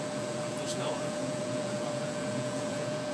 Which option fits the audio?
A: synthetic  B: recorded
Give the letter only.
A